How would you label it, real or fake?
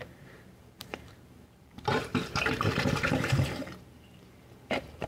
fake